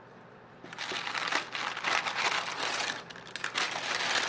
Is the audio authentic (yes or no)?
yes